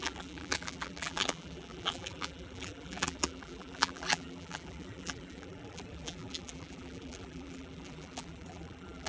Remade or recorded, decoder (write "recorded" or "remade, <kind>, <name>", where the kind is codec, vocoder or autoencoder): remade, vocoder, BigVGAN v2